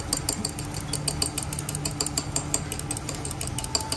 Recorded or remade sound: recorded